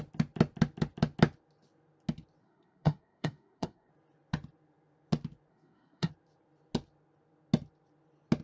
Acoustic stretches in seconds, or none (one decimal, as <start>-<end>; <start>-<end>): 0.0-2.4; 3.9-5.5; 6.1-8.4

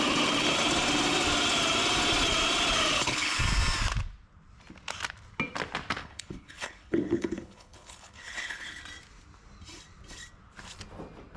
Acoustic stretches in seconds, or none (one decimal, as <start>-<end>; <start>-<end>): 0.0-2.9; 3.4-6.0; 8.8-11.4

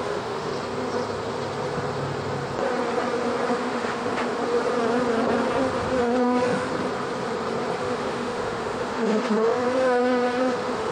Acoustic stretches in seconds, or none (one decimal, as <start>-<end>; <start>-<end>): 0.5-3.5; 4.4-6.2; 6.7-7.8

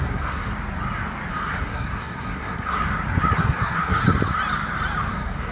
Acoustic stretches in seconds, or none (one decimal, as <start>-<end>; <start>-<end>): 0.5-1.3; 2.8-3.4; 4.0-5.1

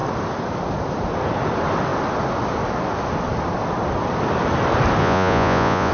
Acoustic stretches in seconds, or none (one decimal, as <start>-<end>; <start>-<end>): 0.0-5.0

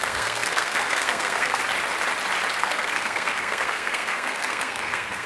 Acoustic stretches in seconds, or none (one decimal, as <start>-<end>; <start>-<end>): 1.6-2.6

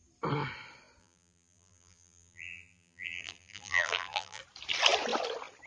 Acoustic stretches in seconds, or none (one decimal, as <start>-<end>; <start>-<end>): 0.0-1.0; 4.4-5.7

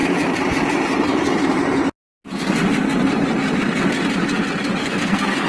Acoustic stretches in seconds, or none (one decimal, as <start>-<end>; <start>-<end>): 0.0-4.8